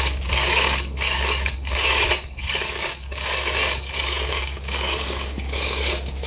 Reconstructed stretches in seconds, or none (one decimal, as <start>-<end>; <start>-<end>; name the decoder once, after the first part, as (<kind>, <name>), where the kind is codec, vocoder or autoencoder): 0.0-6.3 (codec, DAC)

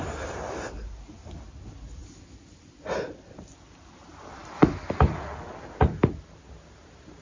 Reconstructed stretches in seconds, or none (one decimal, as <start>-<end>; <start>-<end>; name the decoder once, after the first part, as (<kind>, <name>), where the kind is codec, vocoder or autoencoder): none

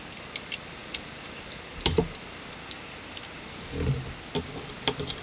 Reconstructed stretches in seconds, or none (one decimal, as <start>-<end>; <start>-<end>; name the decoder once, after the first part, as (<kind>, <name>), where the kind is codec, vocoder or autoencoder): none

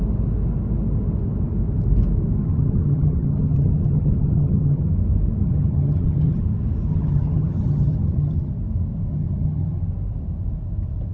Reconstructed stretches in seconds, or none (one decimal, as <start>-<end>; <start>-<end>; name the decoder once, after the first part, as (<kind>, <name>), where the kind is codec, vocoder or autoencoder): 2.4-4.9 (vocoder, HiFi-GAN); 5.4-6.4; 6.9-8.5; 9.1-9.8